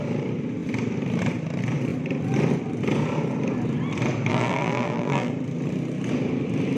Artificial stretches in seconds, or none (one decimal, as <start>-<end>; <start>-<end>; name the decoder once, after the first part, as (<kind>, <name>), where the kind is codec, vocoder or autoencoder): 4.3-5.3 (vocoder, BigVGAN v2)

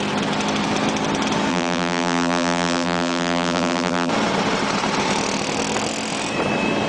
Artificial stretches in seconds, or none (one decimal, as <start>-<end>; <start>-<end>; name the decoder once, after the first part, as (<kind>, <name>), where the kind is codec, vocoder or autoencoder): 1.5-4.1 (vocoder, BigVGAN v2)

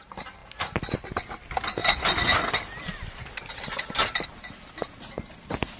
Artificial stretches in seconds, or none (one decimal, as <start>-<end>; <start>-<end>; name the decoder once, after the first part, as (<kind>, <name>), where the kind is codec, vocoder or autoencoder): none

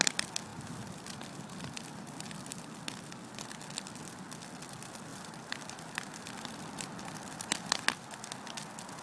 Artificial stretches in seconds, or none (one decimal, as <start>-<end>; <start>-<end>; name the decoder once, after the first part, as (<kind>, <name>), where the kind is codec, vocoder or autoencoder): 0.5-2.8 (vocoder, BigVGAN v2); 5.1-7.7

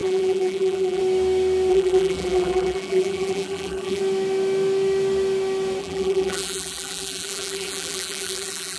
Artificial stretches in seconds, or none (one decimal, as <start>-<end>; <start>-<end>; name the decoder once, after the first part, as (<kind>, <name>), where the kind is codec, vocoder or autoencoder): 0.0-1.0 (vocoder, BigVGAN v2); 1.7-4.0; 5.8-8.8